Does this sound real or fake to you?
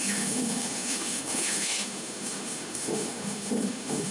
fake